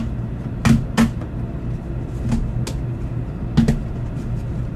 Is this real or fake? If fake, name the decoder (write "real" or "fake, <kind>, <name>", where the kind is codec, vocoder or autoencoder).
real